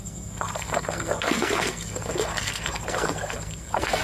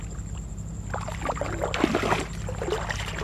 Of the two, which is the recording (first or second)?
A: second